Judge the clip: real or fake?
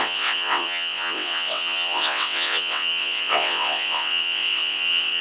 fake